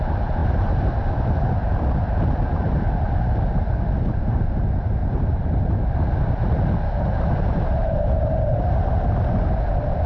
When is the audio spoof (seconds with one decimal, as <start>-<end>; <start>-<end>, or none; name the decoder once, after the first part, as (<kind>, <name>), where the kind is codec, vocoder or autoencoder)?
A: none